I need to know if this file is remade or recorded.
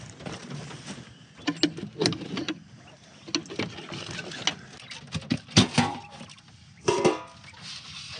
recorded